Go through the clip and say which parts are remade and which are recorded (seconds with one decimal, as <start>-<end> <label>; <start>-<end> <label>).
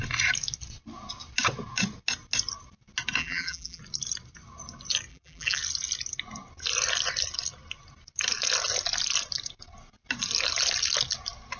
0.0-3.2 recorded; 3.2-3.8 remade; 3.8-5.1 recorded; 5.1-5.6 remade; 5.6-11.6 recorded